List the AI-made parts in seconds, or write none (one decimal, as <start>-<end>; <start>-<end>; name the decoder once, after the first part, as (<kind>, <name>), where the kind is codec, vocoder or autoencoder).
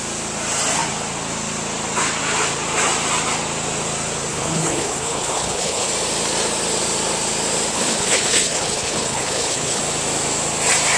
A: 4.3-5.9 (codec, HILCodec); 7.7-9.8